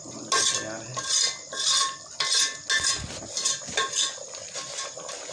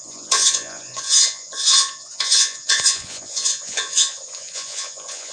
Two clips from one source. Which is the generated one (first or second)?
second